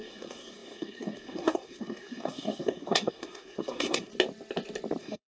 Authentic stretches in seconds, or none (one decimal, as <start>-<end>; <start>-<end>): 4.1-5.0